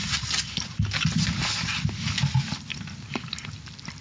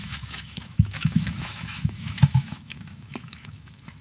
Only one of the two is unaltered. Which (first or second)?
first